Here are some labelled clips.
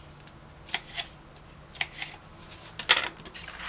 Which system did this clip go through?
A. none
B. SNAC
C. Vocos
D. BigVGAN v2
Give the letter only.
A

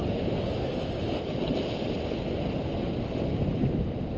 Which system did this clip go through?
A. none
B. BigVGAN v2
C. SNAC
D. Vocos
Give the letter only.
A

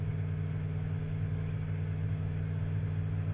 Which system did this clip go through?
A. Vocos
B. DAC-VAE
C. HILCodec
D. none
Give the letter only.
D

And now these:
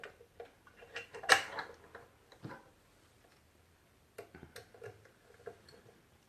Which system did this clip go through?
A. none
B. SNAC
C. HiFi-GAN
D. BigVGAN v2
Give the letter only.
A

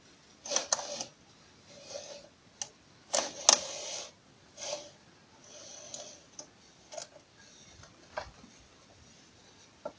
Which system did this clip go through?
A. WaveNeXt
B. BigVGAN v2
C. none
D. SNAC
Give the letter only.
C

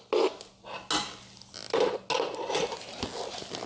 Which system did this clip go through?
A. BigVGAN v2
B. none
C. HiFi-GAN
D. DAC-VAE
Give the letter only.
B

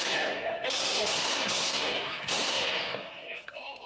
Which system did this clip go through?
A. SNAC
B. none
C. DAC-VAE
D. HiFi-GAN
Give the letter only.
A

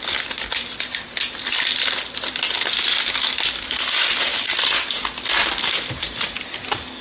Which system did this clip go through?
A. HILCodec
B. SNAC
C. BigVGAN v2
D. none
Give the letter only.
D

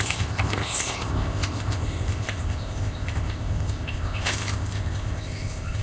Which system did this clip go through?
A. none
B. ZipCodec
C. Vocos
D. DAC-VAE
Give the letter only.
B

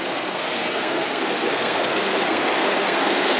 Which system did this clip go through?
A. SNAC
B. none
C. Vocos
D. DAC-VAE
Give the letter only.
A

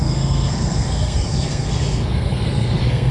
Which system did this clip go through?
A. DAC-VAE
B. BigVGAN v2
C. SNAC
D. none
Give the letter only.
C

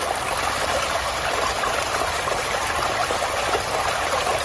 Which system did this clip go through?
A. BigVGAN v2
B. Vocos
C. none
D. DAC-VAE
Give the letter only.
C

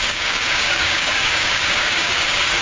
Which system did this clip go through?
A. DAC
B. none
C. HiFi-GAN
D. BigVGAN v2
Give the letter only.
A